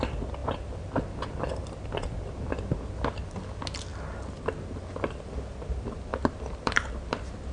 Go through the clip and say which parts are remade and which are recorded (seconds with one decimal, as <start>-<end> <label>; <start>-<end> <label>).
0.0-6.1 recorded; 6.1-6.9 remade; 6.9-7.5 recorded